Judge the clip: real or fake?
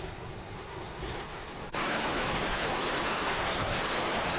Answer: fake